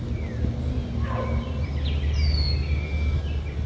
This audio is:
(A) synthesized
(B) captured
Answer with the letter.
B